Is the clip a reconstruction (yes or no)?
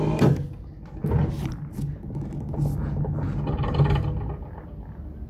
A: no